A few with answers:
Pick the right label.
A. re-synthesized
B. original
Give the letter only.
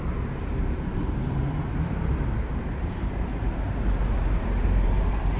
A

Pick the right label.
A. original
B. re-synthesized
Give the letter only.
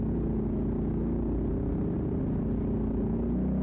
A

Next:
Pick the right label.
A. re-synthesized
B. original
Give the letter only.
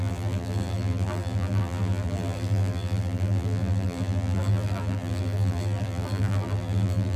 A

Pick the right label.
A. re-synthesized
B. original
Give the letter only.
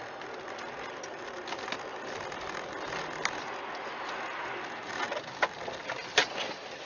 B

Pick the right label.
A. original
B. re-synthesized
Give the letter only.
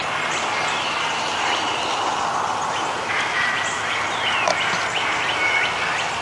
A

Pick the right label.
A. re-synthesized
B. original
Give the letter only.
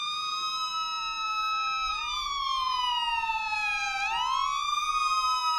A